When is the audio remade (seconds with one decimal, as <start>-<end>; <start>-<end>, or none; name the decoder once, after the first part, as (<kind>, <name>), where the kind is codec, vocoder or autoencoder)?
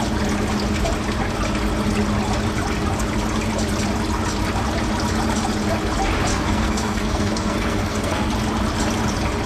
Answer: 6.3-8.3 (codec, SNAC)